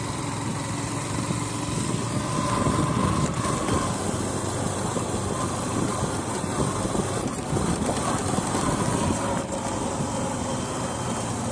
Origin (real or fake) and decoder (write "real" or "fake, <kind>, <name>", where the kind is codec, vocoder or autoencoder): real